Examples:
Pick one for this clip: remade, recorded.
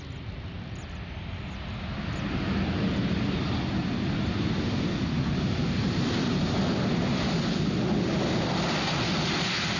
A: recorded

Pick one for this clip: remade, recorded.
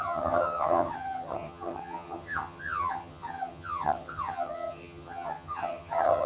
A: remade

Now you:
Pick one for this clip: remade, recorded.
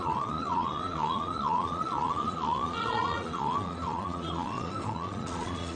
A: remade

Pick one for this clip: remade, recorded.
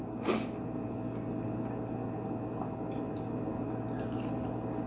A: recorded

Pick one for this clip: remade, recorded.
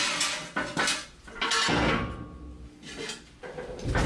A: recorded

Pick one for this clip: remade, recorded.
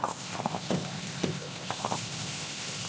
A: remade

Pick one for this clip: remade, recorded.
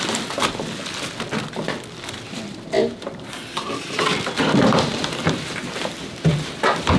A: remade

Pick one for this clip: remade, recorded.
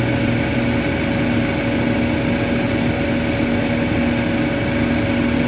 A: recorded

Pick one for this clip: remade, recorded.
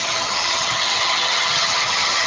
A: remade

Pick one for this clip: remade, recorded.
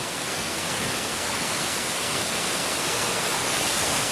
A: remade